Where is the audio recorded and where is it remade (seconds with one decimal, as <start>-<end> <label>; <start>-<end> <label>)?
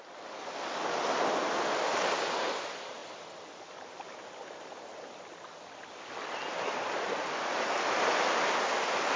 0.0-9.2 recorded